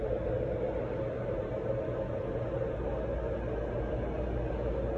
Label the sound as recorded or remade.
recorded